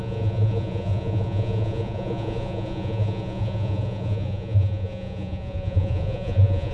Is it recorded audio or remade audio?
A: remade